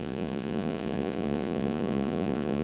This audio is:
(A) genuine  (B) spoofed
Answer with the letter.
B